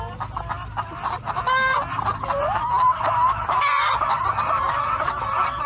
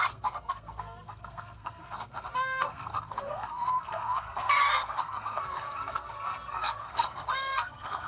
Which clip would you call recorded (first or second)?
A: first